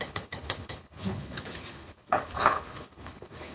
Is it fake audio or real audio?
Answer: fake